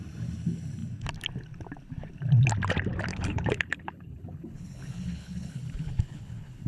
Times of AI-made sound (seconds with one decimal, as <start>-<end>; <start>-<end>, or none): 3.1-6.7